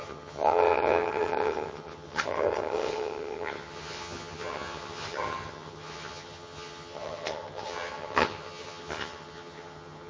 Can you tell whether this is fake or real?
fake